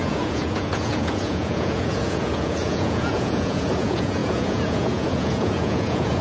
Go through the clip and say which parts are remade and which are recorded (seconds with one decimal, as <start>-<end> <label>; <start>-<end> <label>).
0.0-6.2 remade

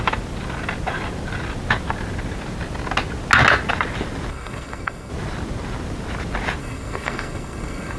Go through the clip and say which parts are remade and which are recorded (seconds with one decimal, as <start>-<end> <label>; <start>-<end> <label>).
0.0-4.3 recorded; 4.3-5.1 remade; 5.1-6.6 recorded; 6.6-8.0 remade

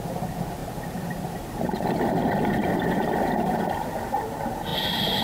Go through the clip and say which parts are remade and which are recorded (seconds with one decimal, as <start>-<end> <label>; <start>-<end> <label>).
0.0-5.2 recorded

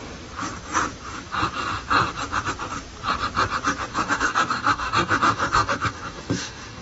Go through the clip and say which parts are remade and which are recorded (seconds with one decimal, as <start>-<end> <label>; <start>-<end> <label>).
0.0-3.9 recorded; 3.9-6.8 remade

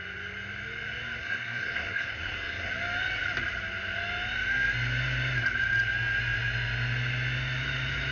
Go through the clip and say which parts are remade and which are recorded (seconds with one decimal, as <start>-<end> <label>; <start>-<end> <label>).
0.0-1.2 recorded; 1.2-2.7 remade; 2.7-8.1 recorded

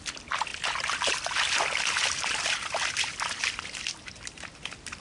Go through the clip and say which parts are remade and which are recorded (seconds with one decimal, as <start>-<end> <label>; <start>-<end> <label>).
0.0-5.0 recorded

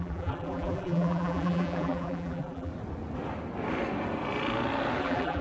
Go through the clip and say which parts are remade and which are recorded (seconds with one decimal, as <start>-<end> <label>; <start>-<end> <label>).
0.0-2.7 remade; 2.7-5.0 recorded; 5.0-5.4 remade

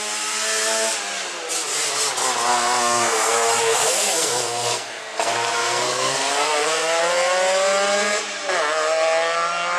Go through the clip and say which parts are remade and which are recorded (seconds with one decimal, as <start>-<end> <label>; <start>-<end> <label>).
0.0-2.5 recorded; 2.5-7.0 remade; 7.0-9.8 recorded